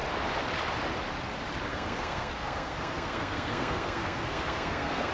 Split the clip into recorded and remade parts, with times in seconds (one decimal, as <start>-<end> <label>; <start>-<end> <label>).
0.0-1.7 recorded; 1.7-5.1 remade

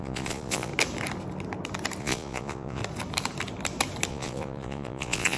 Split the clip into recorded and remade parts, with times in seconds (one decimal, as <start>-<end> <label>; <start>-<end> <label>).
0.0-0.7 remade; 0.7-2.0 recorded; 2.0-2.8 remade; 2.8-4.1 recorded; 4.1-5.4 remade